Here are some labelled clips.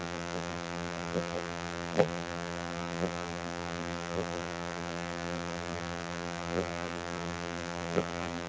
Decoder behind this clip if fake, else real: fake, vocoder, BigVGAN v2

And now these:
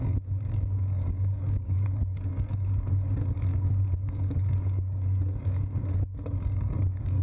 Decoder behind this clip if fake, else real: fake, codec, DAC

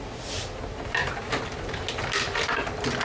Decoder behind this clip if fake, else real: real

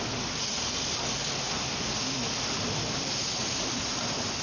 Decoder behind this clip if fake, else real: real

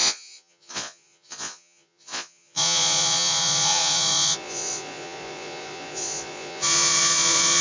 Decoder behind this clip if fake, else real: fake, vocoder, Vocos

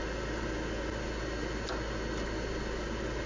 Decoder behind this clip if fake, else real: real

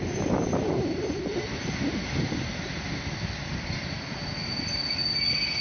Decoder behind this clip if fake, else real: real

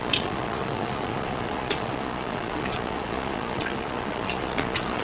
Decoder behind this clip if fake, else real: fake, vocoder, Vocos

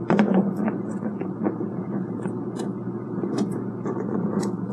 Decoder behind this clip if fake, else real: fake, vocoder, Vocos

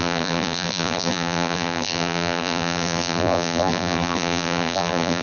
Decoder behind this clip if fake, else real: fake, vocoder, BigVGAN v2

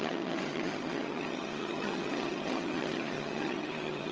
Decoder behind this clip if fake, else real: fake, vocoder, HiFi-GAN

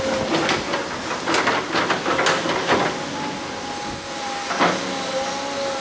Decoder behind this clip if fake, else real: real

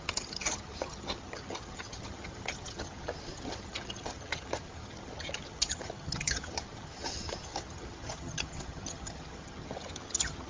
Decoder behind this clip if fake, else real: fake, vocoder, HiFi-GAN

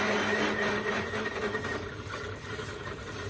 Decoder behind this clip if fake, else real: fake, vocoder, BigVGAN v2